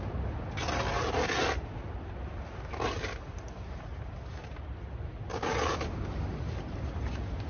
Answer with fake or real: real